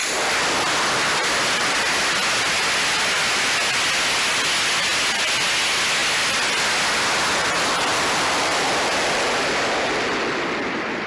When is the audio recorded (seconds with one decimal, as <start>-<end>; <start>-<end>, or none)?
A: 0.0-11.1